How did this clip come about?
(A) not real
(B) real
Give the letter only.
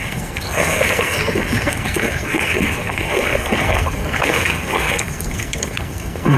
A